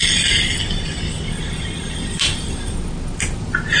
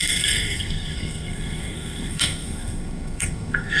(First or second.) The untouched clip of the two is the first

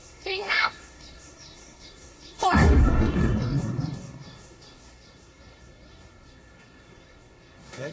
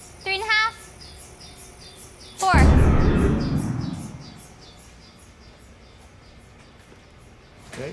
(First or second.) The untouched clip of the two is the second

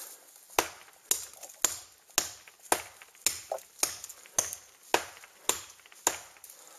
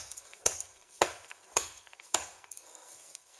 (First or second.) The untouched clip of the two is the first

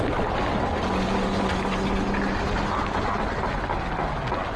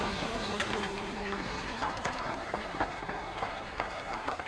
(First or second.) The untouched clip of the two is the first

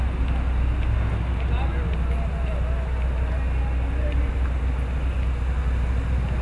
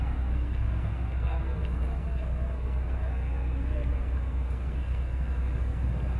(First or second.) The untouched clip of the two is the first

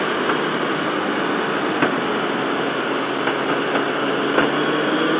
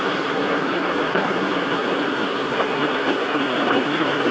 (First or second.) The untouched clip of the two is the first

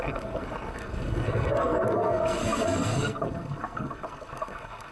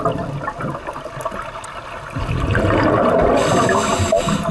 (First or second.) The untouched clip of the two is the second